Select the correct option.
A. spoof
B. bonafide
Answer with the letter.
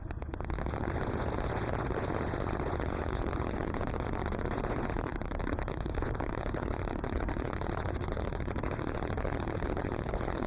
A